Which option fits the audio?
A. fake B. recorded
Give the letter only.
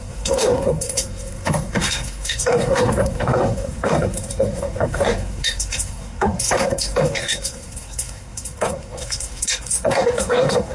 A